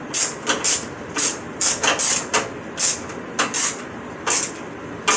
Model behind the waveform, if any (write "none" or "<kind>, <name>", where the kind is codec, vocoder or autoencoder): none